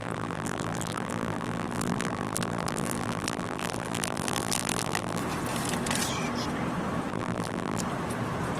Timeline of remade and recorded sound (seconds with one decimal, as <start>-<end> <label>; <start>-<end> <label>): 0.0-5.2 remade; 5.2-7.1 recorded; 7.1-7.8 remade; 7.8-8.6 recorded